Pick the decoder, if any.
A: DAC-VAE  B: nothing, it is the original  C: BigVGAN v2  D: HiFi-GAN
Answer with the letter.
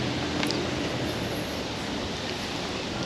B